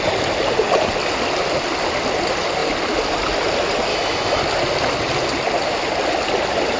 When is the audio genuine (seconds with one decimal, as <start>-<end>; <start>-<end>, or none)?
0.0-3.9; 4.4-6.8